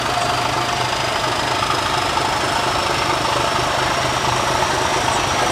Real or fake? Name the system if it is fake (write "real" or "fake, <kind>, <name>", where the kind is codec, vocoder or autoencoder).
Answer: real